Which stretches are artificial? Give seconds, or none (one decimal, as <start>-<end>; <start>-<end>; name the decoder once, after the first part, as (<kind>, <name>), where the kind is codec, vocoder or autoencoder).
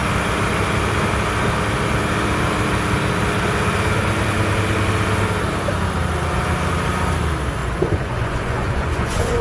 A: 7.6-9.4 (vocoder, Vocos)